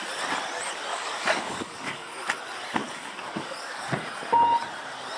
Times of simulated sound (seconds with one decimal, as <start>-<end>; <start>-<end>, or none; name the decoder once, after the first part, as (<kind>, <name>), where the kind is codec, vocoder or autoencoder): 0.9-2.1 (codec, DAC); 2.8-3.9